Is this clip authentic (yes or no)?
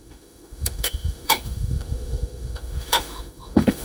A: no